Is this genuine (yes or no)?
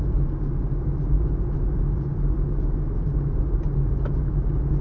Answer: yes